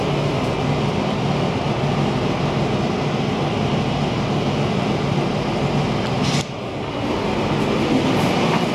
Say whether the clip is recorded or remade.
recorded